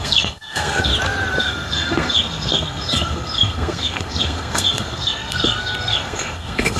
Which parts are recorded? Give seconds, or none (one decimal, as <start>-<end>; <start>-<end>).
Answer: 0.9-1.4